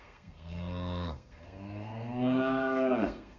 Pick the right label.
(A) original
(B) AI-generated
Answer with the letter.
B